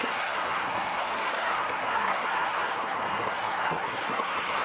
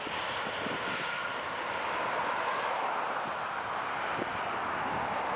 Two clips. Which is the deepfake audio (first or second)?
first